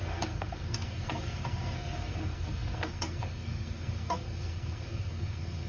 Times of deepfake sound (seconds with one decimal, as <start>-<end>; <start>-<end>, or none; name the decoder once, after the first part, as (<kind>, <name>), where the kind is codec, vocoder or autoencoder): 0.0-5.7 (codec, SNAC)